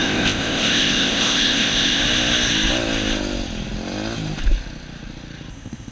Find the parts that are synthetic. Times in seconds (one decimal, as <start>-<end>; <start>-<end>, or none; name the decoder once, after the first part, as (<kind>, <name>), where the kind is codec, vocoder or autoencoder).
0.0-2.0 (codec, ZipCodec); 5.5-5.9